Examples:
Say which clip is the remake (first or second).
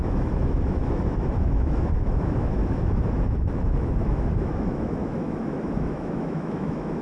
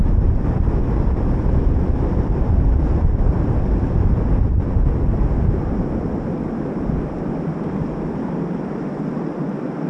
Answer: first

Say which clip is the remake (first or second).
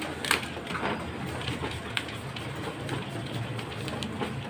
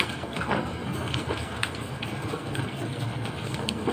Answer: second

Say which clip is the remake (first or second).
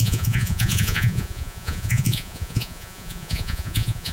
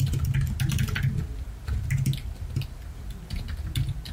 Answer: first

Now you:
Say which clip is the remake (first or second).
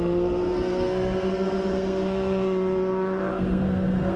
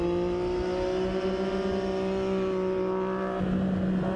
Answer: first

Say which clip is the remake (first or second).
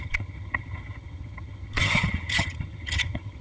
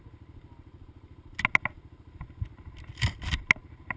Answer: first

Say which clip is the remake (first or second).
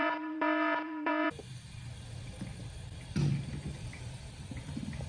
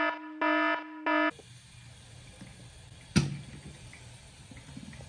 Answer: first